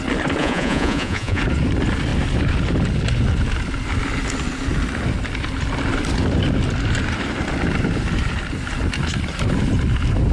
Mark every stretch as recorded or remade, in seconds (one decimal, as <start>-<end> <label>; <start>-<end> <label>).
0.0-0.4 recorded; 0.4-1.4 remade; 1.4-10.3 recorded